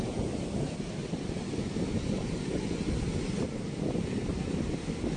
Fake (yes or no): no